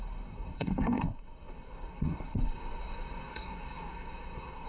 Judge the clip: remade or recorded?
remade